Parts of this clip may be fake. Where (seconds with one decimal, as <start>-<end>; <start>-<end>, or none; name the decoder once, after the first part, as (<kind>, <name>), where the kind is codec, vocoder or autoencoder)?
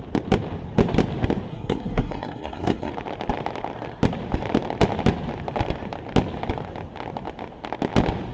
1.5-2.9 (codec, SNAC)